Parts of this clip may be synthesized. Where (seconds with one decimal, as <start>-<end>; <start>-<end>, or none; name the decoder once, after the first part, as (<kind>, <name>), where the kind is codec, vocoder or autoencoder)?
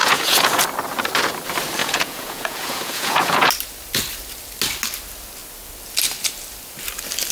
0.0-0.6 (vocoder, Vocos); 1.8-3.5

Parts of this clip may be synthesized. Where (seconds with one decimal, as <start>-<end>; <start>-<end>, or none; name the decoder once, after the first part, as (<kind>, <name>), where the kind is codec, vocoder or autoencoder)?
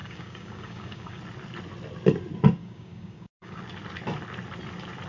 0.0-1.2 (codec, DAC); 2.6-3.6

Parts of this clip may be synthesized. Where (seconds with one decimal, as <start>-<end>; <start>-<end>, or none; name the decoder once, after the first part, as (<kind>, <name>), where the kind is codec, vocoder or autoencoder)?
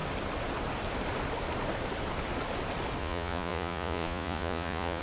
3.0-5.0 (vocoder, Vocos)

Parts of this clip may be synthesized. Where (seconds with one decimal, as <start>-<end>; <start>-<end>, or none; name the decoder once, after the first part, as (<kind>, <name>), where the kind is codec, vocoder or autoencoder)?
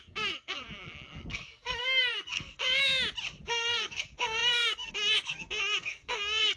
0.0-2.6 (codec, SNAC); 3.5-6.6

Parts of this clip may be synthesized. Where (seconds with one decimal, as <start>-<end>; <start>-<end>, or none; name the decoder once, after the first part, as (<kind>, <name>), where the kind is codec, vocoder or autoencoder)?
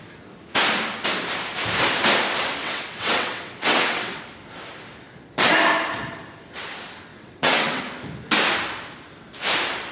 2.6-4.2 (vocoder, WaveNeXt); 7.1-7.8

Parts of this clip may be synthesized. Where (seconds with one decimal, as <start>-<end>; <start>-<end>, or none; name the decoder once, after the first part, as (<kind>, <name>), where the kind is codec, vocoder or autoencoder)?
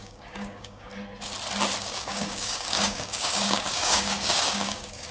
0.0-0.9 (codec, DAC); 1.8-5.1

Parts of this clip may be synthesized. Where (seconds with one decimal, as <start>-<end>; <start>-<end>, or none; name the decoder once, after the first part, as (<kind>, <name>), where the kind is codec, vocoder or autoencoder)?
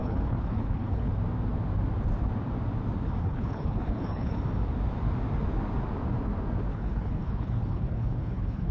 0.0-1.1 (codec, HILCodec); 3.2-4.4; 6.7-8.7